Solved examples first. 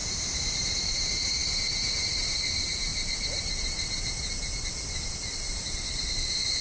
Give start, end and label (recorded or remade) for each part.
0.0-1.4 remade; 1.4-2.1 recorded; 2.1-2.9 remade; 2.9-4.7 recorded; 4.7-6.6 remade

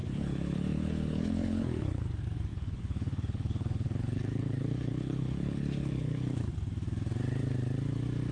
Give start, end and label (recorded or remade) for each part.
0.0-2.0 remade; 2.0-2.5 recorded; 2.5-6.5 remade; 6.5-8.3 recorded